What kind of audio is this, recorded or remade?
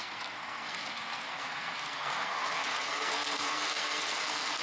remade